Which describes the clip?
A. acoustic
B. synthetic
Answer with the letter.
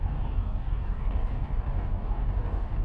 B